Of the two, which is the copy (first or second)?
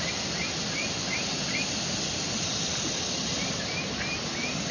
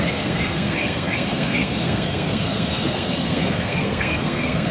second